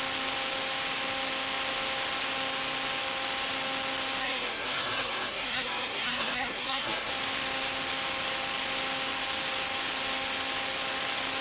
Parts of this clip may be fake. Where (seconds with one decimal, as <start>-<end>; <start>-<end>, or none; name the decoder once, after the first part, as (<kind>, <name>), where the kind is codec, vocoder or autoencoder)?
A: 4.2-7.1 (codec, SNAC)